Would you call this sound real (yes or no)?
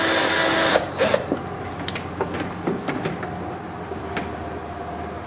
yes